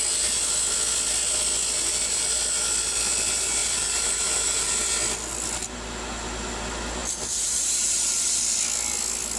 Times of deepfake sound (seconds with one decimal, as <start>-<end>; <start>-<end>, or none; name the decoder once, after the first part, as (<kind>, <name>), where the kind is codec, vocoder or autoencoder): 3.6-4.7 (vocoder, BigVGAN v2); 7.0-8.4